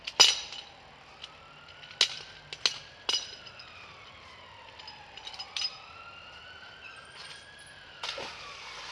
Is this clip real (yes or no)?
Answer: yes